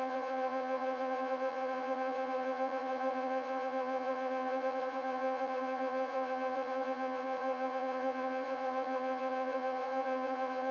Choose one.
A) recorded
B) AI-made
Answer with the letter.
B